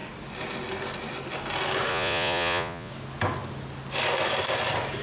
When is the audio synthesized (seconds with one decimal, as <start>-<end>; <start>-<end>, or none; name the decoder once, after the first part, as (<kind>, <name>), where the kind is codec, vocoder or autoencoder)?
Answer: 1.9-2.9 (vocoder, Vocos)